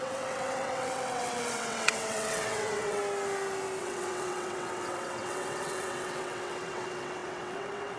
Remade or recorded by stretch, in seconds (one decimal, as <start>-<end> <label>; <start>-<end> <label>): 0.0-3.0 remade; 3.0-3.8 recorded; 3.8-8.0 remade